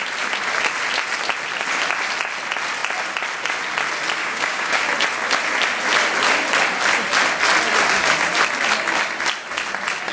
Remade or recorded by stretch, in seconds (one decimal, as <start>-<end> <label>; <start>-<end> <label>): 0.0-4.2 recorded; 4.2-4.8 remade; 4.8-10.1 recorded